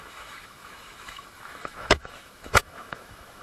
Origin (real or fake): fake